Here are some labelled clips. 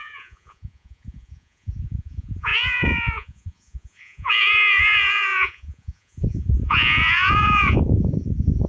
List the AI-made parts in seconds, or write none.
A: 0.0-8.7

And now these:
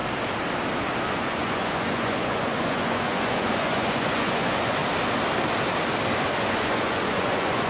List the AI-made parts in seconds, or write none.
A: 1.1-4.8; 6.4-7.7

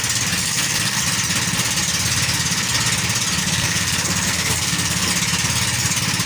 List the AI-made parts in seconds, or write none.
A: 0.4-1.0; 3.4-5.1

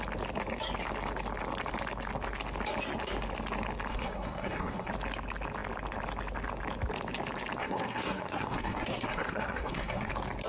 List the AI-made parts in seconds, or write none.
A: 3.9-4.9; 7.6-10.1